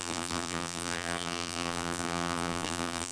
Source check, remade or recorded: remade